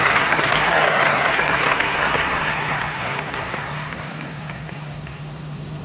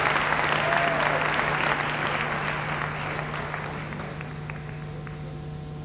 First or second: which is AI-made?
first